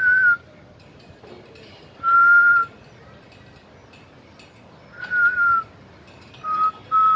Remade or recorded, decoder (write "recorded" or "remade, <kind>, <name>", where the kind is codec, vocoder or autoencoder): recorded